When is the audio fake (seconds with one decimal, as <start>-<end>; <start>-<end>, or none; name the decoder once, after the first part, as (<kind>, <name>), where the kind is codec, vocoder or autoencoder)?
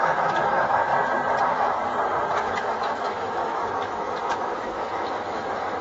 0.0-0.9 (autoencoder, DAC-VAE); 1.4-1.8; 2.3-5.8